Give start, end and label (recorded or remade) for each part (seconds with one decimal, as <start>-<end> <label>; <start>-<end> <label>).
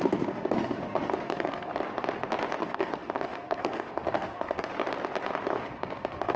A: 0.0-1.7 remade; 1.7-2.6 recorded; 2.6-4.7 remade; 4.7-5.5 recorded; 5.5-6.4 remade